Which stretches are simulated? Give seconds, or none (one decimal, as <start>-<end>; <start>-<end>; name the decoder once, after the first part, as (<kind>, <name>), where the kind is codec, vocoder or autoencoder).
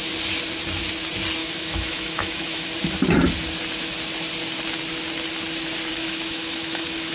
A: 1.4-2.7 (autoencoder, DAC-VAE); 5.9-7.1